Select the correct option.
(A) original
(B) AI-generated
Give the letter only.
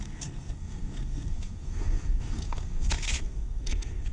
B